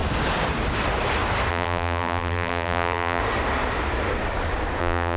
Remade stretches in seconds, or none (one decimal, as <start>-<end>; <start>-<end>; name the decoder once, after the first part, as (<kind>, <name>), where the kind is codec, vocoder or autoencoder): 1.5-3.2 (vocoder, BigVGAN v2); 4.8-5.2